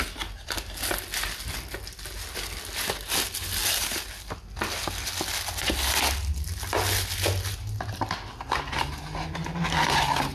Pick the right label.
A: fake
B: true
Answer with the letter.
B